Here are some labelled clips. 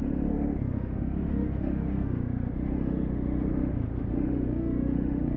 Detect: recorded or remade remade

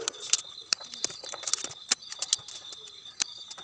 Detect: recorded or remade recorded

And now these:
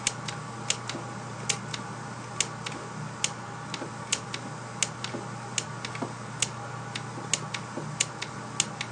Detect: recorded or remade recorded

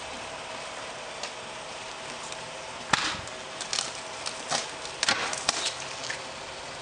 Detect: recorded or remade recorded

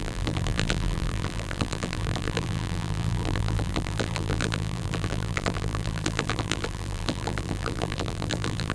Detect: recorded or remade remade